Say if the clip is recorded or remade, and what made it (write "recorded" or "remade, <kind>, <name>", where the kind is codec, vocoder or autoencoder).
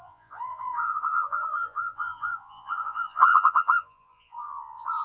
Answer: remade, vocoder, Vocos